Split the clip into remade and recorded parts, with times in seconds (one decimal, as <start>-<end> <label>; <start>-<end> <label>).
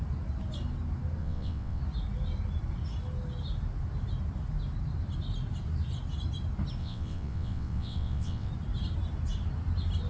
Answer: 0.0-1.2 recorded; 1.2-1.8 remade; 1.8-6.8 recorded; 6.8-8.5 remade; 8.5-10.1 recorded